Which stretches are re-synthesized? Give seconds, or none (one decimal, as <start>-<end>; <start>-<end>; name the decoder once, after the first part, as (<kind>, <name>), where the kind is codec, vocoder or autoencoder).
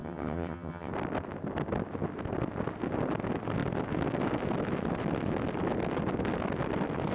0.0-0.9 (vocoder, HiFi-GAN)